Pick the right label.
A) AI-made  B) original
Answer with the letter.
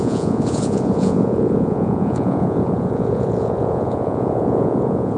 A